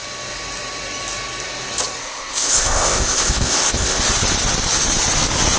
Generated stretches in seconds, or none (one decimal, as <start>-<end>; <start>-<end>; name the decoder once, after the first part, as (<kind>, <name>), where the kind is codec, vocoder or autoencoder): 2.0-4.0 (codec, ZipCodec)